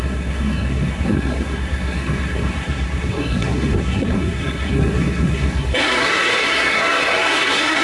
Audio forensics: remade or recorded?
remade